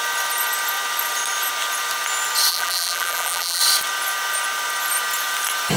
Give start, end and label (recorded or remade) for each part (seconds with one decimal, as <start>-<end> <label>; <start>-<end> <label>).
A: 0.0-2.5 recorded; 2.5-3.6 remade; 3.6-5.8 recorded